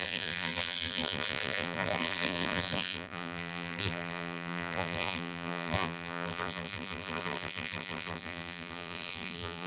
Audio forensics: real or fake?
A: fake